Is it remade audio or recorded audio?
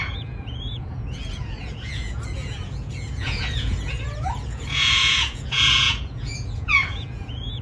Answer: remade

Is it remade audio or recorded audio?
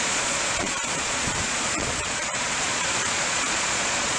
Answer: remade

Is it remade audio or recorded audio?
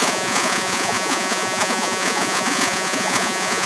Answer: remade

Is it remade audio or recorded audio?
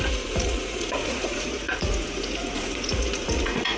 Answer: remade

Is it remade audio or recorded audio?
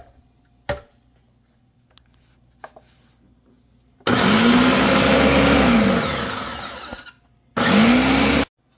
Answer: recorded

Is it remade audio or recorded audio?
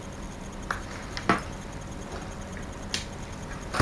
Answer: recorded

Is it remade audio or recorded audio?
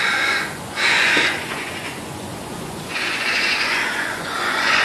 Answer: remade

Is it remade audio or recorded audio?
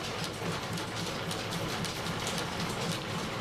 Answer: recorded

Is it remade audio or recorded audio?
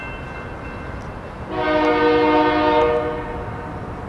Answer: recorded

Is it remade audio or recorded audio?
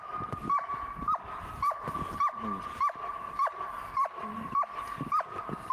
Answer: recorded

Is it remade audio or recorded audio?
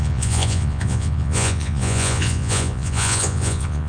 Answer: remade